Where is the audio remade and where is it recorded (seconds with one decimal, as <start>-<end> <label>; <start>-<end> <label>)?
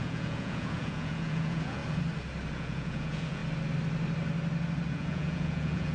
0.0-1.8 remade; 1.8-2.5 recorded; 2.5-3.4 remade; 3.4-4.9 recorded; 4.9-5.9 remade